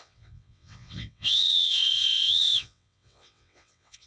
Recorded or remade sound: remade